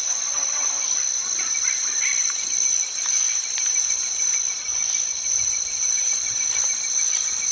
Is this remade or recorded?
recorded